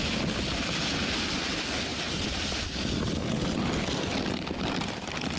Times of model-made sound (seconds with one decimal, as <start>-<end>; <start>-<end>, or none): 1.9-2.5